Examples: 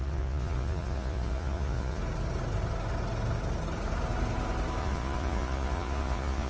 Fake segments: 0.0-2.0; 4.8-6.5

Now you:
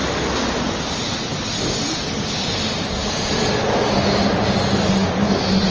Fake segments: none

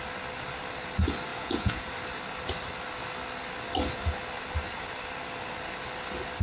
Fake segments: 1.3-1.9

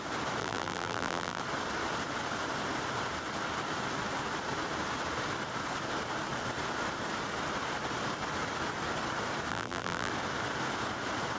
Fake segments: 0.4-1.4; 9.5-10.1

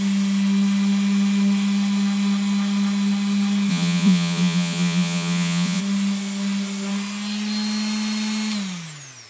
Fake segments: 3.7-5.8